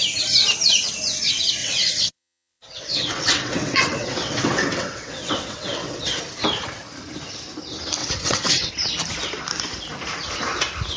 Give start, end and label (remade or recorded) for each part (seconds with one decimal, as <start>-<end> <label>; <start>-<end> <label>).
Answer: 0.0-1.6 recorded; 1.6-6.2 remade; 6.2-8.0 recorded; 8.0-8.7 remade; 8.7-11.0 recorded